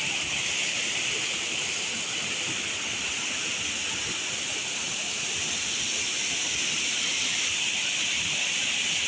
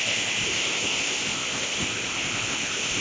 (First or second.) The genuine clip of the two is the first